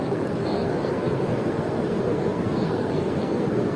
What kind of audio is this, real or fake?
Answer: fake